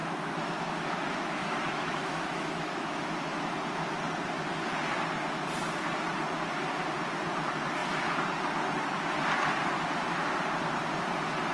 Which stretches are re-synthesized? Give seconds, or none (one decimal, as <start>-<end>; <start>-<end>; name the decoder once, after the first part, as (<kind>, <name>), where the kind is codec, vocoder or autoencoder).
0.0-3.5 (autoencoder, DAC-VAE)

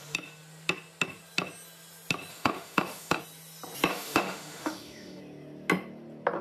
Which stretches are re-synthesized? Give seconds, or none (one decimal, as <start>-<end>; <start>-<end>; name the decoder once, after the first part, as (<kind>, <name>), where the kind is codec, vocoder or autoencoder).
2.3-3.2 (autoencoder, DAC-VAE); 3.9-5.2

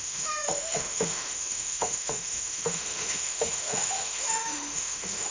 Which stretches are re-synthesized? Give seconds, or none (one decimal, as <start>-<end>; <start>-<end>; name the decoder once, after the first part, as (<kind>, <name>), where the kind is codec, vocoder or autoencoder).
0.0-5.3 (autoencoder, DAC-VAE)

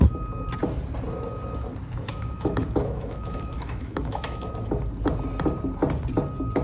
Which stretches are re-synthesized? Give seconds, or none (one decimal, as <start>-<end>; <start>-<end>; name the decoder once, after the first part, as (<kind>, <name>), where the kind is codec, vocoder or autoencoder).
2.0-4.5 (autoencoder, DAC-VAE)

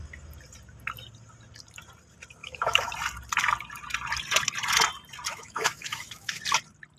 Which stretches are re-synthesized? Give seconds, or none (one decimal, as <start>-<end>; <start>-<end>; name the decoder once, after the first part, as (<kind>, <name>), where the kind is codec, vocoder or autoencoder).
2.4-2.9 (autoencoder, DAC-VAE); 5.3-6.4

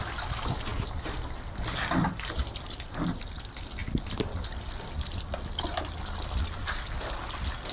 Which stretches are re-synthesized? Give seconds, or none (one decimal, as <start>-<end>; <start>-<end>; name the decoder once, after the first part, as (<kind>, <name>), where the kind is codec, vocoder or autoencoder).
none

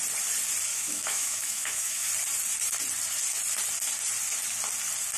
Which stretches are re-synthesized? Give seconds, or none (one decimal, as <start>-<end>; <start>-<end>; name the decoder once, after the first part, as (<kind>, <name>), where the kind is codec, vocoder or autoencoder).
0.7-2.1 (autoencoder, DAC-VAE)